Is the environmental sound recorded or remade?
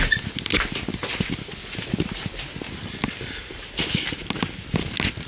recorded